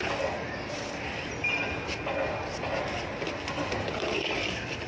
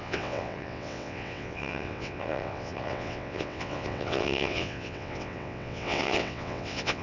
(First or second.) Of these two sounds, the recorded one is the first